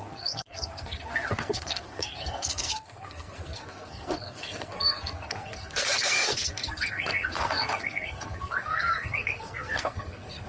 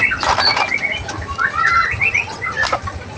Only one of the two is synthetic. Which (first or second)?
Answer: first